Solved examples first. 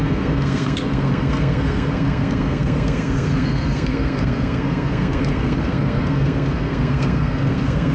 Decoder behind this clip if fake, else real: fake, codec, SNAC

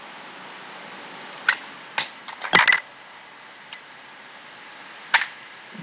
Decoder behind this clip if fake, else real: real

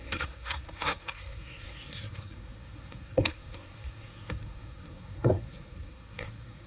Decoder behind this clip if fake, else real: fake, codec, SNAC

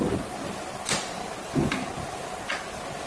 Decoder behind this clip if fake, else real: real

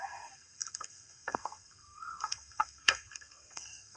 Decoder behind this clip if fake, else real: fake, codec, SNAC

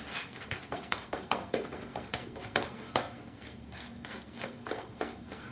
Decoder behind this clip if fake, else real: fake, codec, SNAC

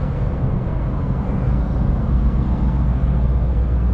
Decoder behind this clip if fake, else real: fake, codec, SNAC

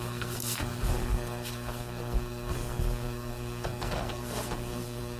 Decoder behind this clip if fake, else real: fake, codec, SNAC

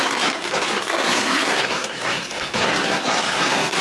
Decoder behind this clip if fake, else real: fake, codec, SNAC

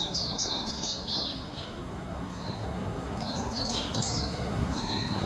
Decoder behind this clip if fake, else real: fake, codec, SNAC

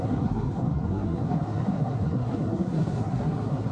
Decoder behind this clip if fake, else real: fake, codec, SNAC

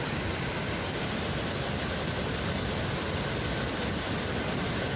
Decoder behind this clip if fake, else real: real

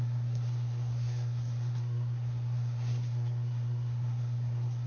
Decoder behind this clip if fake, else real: fake, codec, SNAC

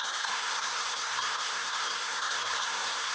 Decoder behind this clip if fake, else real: fake, codec, SNAC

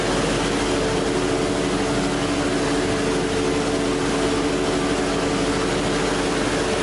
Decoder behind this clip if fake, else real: real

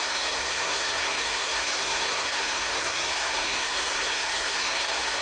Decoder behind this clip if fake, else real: fake, codec, SNAC